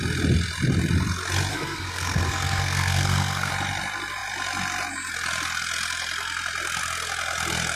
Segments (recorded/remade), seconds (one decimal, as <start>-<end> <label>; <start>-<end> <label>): 0.0-1.5 recorded; 1.5-3.5 remade; 3.5-7.8 recorded